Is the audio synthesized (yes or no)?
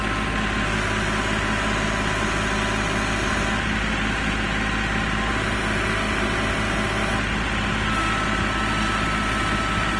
no